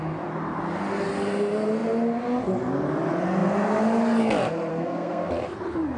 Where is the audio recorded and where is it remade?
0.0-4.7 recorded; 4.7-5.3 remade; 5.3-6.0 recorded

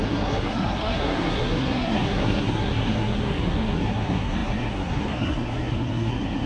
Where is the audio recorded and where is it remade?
0.0-6.5 remade

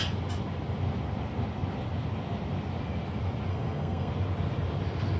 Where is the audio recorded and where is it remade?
0.0-3.5 recorded; 3.5-4.1 remade; 4.1-5.2 recorded

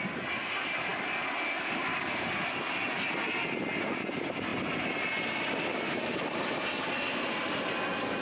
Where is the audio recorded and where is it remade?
0.0-8.2 recorded

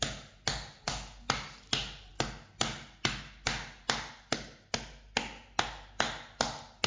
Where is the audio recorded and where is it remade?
0.0-6.9 recorded

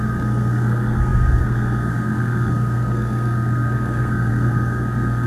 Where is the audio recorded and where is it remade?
0.0-5.3 remade